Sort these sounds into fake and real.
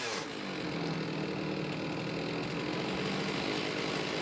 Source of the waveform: real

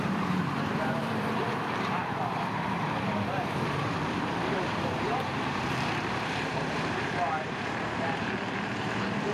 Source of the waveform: fake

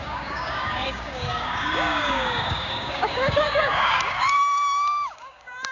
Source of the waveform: fake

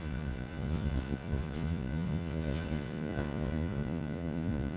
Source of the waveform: fake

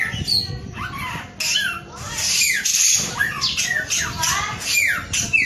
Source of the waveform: real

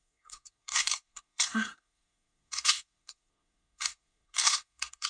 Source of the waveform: fake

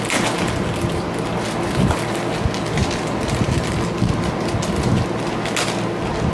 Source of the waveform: real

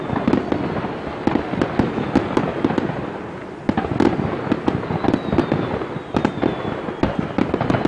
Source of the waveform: real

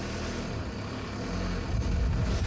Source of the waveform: fake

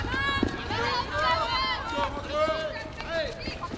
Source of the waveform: real